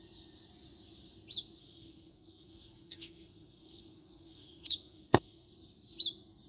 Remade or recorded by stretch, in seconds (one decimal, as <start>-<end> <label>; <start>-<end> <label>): 0.0-1.6 recorded; 1.6-5.5 remade; 5.5-6.5 recorded